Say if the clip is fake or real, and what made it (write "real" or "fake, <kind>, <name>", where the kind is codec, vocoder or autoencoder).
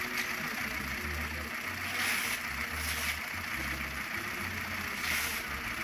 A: real